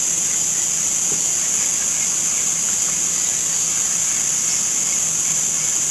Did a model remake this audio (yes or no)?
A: no